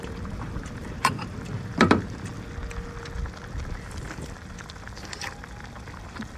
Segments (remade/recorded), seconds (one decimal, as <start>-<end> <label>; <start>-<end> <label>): 0.0-2.3 remade; 2.3-6.0 recorded; 6.0-6.4 remade